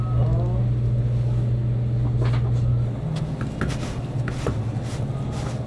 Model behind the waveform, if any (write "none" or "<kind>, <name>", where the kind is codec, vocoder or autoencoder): none